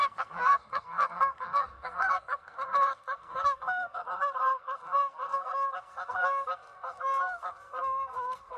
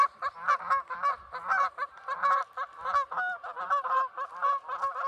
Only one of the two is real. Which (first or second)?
second